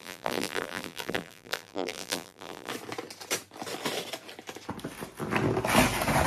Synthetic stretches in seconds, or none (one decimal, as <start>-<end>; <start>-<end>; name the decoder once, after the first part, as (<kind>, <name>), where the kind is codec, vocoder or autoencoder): 0.0-2.7 (vocoder, BigVGAN v2)